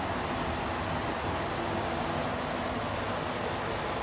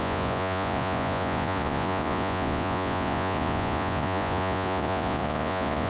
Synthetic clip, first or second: second